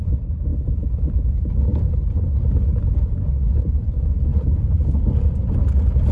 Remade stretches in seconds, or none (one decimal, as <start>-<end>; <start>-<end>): 4.3-4.9